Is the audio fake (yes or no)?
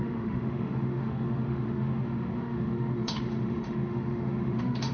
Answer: yes